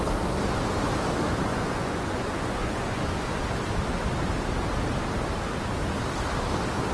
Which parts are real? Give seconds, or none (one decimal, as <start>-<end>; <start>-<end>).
0.0-1.5; 3.4-6.9